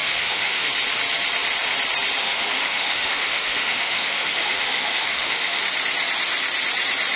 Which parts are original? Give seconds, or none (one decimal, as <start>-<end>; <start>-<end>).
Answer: 0.7-2.2; 5.6-7.2